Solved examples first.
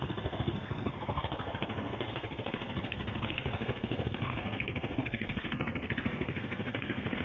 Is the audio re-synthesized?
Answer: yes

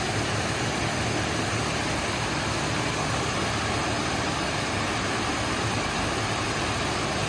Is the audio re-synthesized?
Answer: no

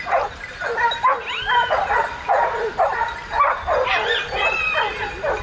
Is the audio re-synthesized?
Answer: no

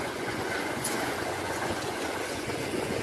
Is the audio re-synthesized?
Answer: yes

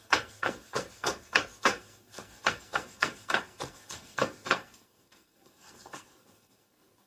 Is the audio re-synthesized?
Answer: yes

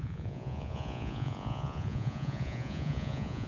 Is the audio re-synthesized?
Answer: yes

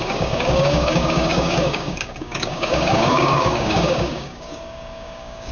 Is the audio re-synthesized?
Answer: yes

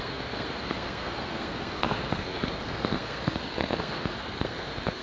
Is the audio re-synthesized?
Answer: yes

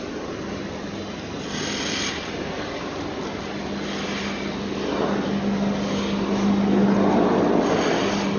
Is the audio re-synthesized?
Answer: no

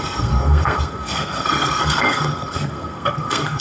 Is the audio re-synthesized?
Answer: yes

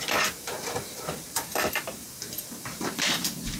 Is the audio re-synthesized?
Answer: yes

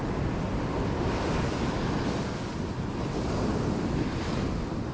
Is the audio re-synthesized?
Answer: no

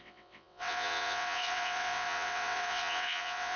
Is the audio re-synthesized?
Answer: yes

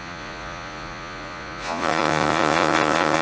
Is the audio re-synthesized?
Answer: yes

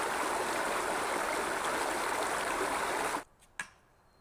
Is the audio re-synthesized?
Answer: no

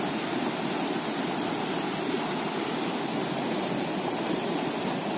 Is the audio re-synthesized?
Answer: no